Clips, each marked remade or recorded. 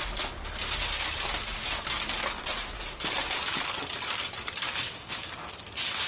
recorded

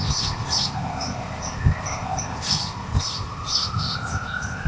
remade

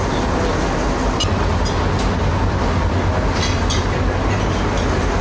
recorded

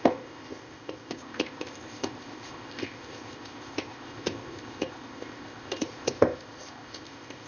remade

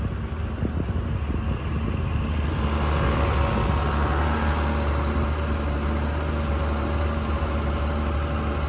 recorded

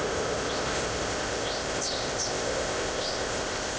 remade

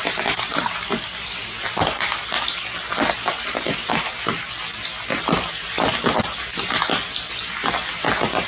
recorded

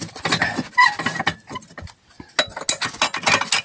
recorded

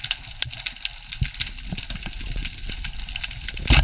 recorded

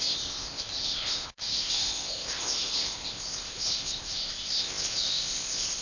remade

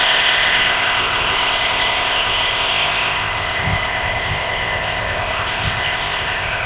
remade